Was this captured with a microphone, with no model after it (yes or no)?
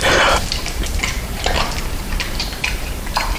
no